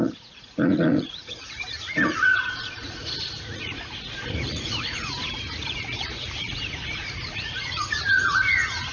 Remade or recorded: remade